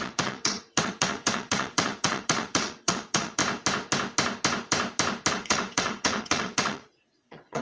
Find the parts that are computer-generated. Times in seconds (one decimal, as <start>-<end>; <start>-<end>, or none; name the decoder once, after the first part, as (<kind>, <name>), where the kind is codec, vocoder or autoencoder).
0.0-3.4 (vocoder, WaveNeXt); 5.3-7.6

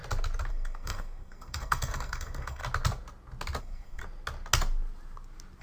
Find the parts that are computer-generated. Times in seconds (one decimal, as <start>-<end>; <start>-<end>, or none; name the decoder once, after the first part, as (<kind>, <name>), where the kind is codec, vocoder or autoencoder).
0.5-2.6 (codec, SNAC); 3.6-4.0

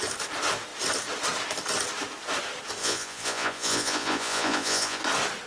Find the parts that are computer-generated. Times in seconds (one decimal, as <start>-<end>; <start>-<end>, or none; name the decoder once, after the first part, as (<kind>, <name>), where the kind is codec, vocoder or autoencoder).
2.8-5.0 (vocoder, Vocos)

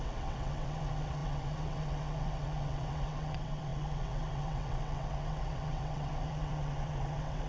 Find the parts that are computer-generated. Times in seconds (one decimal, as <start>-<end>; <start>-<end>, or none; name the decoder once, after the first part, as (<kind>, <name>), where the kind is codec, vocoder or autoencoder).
0.0-7.5 (vocoder, WaveNeXt)

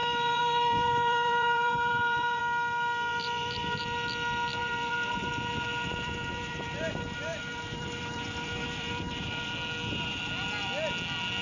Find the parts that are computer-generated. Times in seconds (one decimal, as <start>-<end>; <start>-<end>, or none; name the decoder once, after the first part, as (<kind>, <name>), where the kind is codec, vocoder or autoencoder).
0.0-2.4 (vocoder, BigVGAN v2); 3.1-3.8; 4.6-9.5

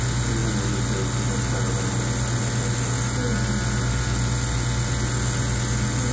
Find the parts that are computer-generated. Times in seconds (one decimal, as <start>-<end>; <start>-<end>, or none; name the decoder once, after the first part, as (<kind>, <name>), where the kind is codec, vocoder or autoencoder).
none

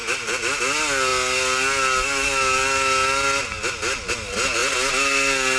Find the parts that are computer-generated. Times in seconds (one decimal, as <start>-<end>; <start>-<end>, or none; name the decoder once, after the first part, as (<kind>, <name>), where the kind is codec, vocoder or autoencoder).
0.0-0.6 (vocoder, BigVGAN v2)

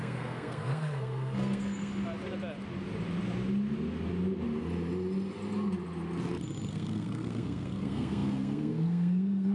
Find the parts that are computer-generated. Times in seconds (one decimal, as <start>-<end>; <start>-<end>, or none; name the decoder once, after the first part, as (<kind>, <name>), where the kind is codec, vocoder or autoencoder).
0.0-1.9 (codec, SNAC); 6.7-9.5